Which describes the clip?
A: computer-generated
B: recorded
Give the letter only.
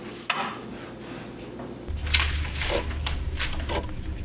B